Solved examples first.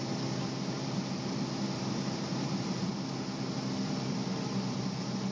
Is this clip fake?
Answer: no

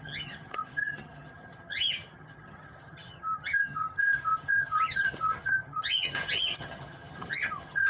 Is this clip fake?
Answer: yes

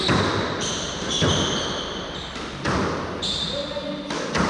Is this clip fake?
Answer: no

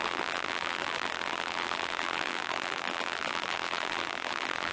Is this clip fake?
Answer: yes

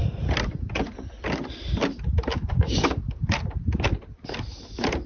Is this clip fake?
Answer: no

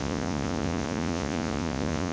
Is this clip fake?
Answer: yes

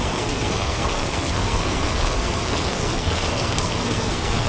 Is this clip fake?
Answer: yes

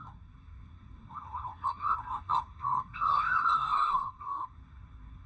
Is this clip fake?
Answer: yes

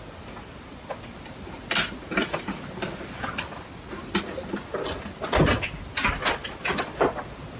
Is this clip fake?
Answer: no